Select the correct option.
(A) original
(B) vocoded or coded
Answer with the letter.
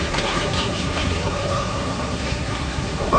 B